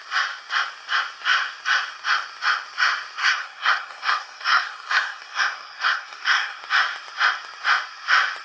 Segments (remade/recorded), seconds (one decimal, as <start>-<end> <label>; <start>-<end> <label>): 0.0-3.2 recorded; 3.2-6.6 remade; 6.6-8.4 recorded